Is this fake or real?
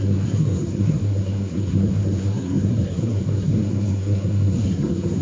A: fake